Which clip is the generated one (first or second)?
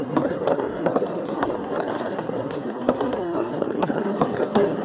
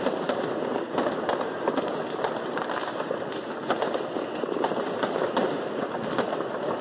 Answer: first